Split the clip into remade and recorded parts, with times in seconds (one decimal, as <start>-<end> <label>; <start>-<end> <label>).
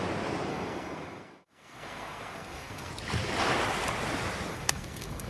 0.0-0.5 recorded; 0.5-2.9 remade; 2.9-4.5 recorded; 4.5-5.3 remade